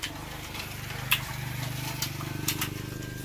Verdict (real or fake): real